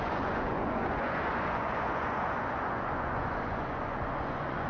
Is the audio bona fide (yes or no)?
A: no